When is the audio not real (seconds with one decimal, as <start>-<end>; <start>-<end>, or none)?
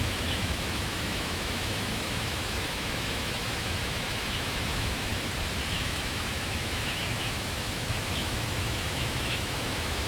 0.0-5.1; 5.7-10.1